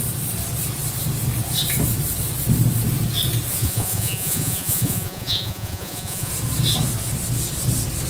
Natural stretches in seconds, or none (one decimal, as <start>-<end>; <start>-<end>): 0.0-3.6; 6.3-8.1